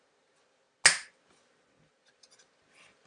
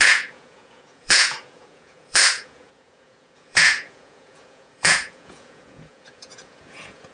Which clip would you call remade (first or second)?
second